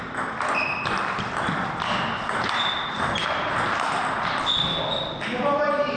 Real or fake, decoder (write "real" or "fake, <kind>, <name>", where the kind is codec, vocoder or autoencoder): real